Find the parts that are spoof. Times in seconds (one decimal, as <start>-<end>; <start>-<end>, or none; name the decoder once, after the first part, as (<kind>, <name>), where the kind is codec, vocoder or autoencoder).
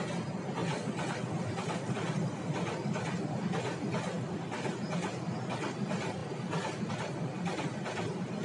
none